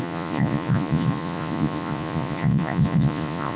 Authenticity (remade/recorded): remade